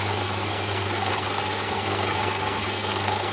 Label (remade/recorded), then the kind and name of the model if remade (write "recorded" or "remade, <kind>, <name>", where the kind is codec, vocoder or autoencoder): remade, codec, SNAC